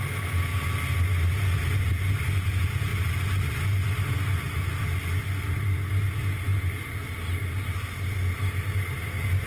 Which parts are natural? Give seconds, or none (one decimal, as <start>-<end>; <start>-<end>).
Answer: 0.0-2.9; 4.0-9.5